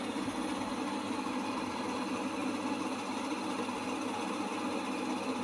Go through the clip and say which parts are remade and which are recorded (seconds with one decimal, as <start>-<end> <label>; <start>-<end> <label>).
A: 0.0-5.4 recorded